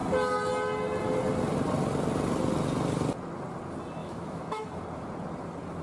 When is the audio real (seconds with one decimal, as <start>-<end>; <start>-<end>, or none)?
0.0-4.0; 4.7-5.8